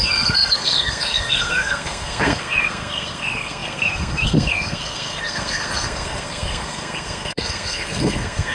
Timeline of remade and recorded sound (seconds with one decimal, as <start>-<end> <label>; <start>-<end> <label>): 0.0-8.5 remade